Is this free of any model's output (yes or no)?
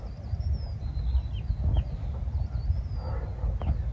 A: yes